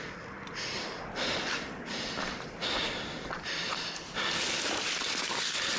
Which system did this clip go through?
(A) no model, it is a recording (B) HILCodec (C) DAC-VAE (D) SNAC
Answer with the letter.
A